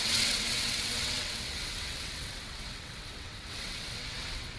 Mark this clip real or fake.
fake